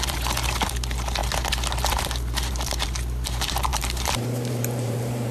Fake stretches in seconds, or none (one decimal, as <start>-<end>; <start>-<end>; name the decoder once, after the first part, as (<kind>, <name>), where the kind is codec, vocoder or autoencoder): 3.7-5.3 (vocoder, BigVGAN v2)